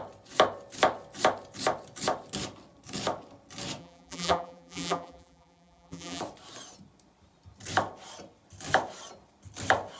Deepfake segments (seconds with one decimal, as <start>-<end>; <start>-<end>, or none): 3.8-6.2